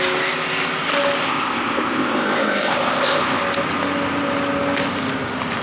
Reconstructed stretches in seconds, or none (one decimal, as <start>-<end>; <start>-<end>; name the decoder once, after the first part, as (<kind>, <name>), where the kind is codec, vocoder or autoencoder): 1.2-3.4 (codec, ZipCodec)